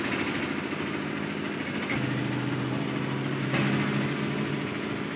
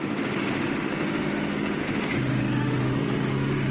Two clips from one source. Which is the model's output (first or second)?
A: second